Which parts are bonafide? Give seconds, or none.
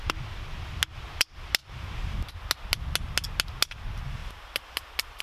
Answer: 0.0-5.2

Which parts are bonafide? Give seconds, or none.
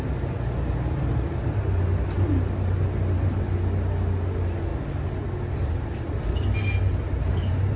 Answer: 0.0-7.8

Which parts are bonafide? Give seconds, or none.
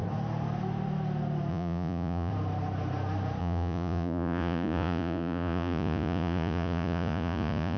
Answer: 0.0-1.5; 2.3-3.4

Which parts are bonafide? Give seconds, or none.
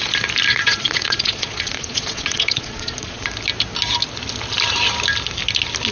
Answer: 0.0-0.5; 3.3-5.9